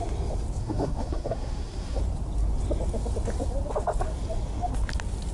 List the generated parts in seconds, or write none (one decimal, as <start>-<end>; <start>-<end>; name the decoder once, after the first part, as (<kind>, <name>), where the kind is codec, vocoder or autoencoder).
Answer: 0.6-2.0 (codec, SNAC)